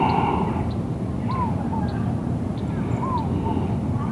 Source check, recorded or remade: remade